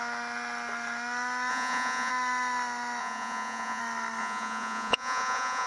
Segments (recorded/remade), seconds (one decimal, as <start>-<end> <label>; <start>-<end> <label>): 0.0-1.5 recorded; 1.5-2.1 remade; 2.1-3.0 recorded; 3.0-3.8 remade; 3.8-4.2 recorded; 4.2-5.7 remade